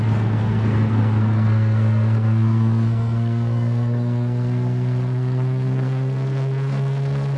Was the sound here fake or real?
fake